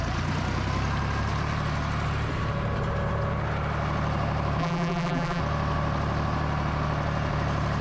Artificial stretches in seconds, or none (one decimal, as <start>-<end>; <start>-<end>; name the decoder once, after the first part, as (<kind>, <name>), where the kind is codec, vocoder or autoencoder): 4.6-5.4 (vocoder, BigVGAN v2)